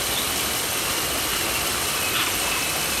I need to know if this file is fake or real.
real